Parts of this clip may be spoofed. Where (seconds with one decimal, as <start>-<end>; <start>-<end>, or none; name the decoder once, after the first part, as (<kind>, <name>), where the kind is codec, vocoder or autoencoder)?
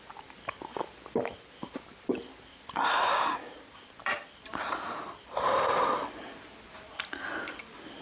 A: none